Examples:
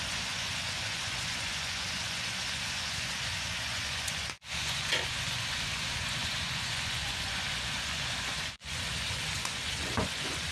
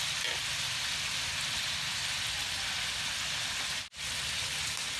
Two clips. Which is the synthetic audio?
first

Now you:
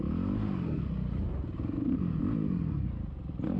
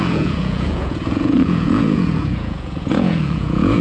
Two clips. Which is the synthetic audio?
second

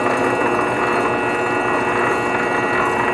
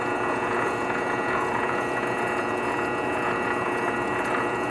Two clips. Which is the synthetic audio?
second